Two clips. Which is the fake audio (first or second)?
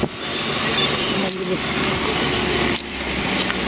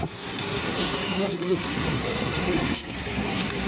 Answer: second